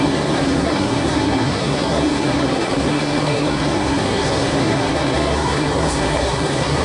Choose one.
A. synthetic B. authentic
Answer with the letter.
A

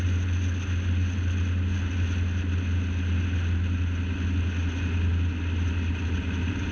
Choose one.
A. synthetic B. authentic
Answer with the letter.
B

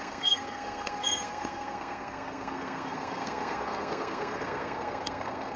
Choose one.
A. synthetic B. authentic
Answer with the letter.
A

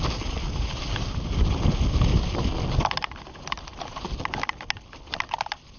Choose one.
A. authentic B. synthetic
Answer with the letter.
A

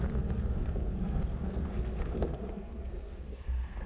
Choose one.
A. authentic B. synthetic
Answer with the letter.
B